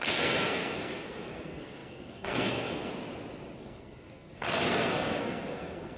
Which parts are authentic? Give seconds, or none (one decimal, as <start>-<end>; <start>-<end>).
2.9-3.6